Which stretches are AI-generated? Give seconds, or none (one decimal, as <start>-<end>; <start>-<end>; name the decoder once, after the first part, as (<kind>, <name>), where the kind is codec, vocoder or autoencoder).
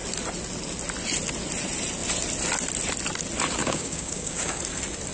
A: 3.6-4.6 (codec, DAC)